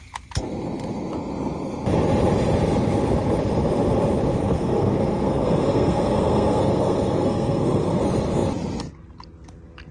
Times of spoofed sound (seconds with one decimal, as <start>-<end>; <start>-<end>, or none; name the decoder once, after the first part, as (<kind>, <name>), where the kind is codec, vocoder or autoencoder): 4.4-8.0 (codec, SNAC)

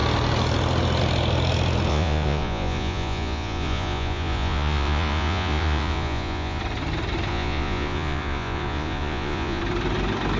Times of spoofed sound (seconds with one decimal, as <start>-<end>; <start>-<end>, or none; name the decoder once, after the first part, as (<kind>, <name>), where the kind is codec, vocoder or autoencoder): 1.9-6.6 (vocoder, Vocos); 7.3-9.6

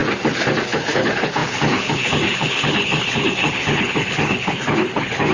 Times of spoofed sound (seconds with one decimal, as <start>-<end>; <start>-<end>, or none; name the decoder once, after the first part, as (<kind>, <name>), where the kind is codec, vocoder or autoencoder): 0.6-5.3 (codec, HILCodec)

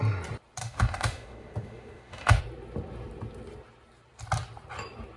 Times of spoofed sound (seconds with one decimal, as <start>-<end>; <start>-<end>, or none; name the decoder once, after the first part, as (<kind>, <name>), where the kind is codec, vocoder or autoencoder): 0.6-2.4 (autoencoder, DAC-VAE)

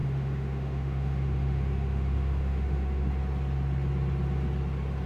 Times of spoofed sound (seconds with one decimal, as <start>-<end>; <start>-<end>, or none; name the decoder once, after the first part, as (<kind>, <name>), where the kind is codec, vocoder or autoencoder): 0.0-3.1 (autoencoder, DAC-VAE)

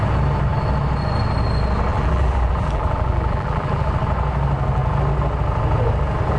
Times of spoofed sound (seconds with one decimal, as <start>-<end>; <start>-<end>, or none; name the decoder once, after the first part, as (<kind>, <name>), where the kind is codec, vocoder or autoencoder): 1.9-3.9 (vocoder, BigVGAN v2)